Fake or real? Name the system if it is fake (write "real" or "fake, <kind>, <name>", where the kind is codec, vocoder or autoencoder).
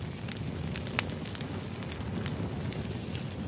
real